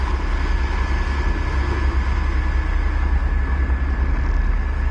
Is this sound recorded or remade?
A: recorded